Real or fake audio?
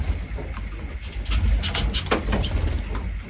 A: real